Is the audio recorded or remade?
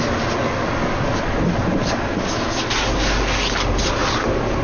recorded